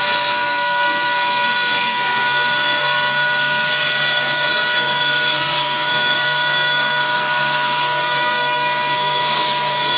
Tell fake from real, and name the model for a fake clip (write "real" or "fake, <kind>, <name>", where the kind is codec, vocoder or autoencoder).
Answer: fake, codec, SNAC